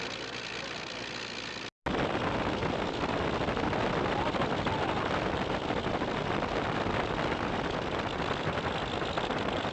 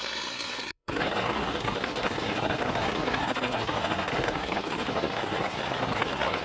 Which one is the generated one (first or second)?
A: second